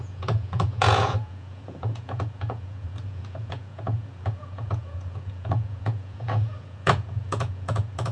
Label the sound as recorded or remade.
remade